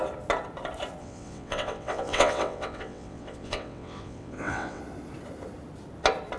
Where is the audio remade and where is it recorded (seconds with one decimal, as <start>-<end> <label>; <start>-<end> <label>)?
0.0-1.0 recorded; 1.0-4.8 remade; 4.8-6.4 recorded